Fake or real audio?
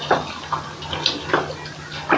real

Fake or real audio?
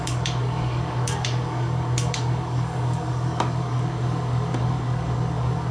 fake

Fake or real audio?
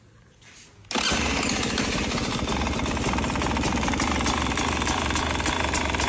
real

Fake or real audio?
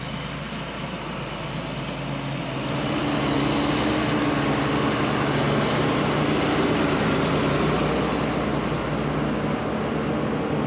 real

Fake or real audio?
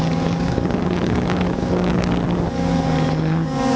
fake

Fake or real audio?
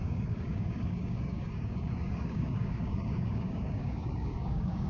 fake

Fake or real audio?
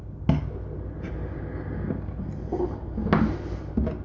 real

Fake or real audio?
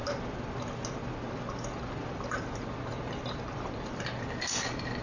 real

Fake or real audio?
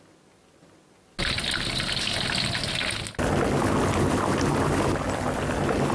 real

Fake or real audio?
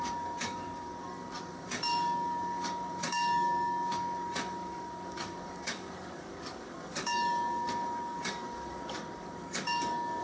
fake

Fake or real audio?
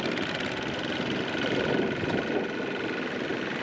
real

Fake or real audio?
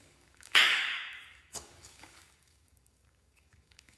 fake